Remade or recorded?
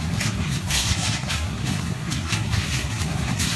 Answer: remade